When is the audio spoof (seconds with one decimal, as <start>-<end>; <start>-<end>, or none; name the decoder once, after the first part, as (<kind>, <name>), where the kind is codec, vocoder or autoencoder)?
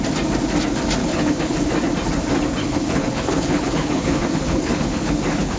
1.0-1.7 (codec, HILCodec); 2.6-5.6